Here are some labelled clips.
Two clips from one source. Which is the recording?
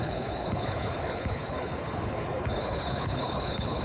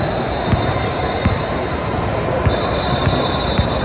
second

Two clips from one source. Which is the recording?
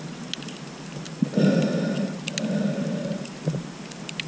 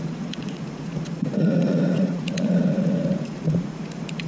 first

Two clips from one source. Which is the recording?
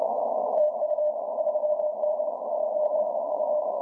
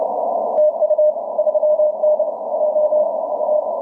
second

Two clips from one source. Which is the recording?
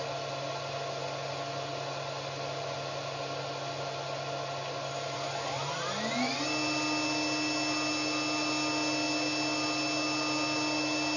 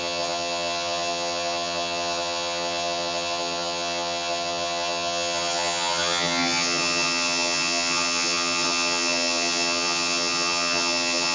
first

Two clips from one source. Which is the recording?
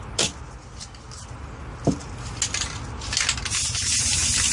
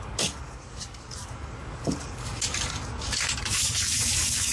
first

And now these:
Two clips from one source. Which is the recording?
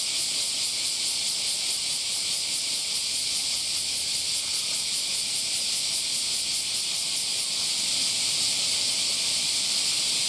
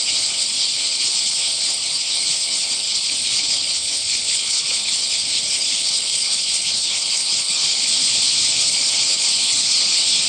first